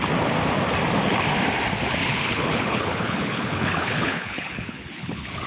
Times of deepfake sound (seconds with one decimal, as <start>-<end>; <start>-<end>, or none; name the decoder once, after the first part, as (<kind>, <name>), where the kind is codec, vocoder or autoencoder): 2.0-5.5 (codec, HILCodec)